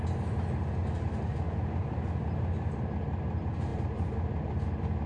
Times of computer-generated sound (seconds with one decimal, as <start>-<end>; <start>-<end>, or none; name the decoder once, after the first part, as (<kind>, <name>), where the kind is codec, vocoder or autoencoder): none